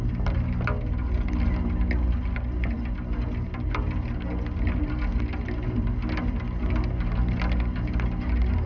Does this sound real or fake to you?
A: real